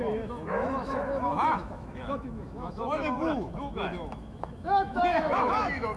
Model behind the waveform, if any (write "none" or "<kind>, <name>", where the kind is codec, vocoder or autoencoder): autoencoder, DAC-VAE